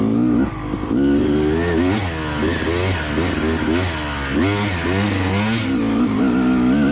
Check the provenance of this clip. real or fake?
real